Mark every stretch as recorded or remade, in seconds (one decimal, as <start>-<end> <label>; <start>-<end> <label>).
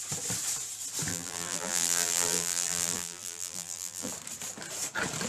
0.0-1.1 recorded; 1.1-4.1 remade; 4.1-5.3 recorded